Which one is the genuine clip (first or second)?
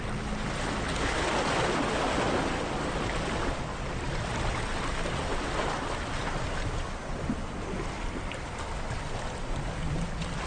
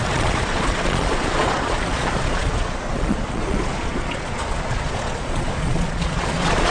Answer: first